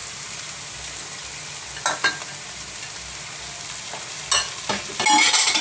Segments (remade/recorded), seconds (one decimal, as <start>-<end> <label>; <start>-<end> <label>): 0.0-5.6 recorded